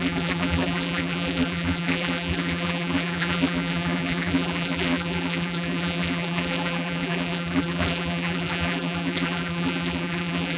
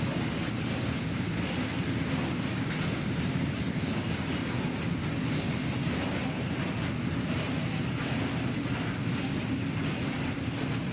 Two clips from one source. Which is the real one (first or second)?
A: second